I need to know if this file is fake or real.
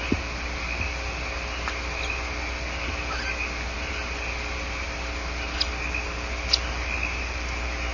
real